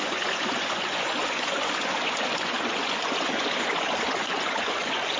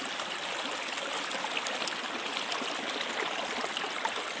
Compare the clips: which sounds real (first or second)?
second